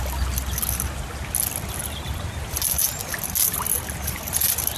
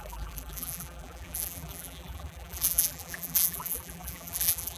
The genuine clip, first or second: first